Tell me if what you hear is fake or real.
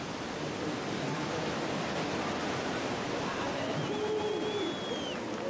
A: real